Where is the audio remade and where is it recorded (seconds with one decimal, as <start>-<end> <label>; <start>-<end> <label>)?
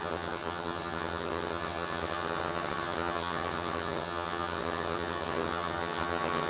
0.0-6.5 remade